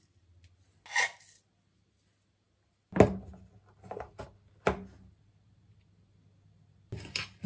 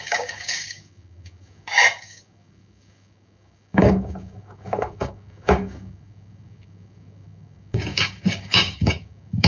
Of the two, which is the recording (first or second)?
first